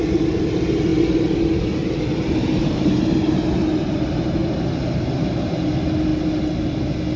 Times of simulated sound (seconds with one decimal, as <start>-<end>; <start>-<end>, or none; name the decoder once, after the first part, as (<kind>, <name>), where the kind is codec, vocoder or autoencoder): 1.8-3.4 (vocoder, BigVGAN v2)